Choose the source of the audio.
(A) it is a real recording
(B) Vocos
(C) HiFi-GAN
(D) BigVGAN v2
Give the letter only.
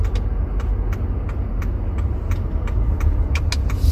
A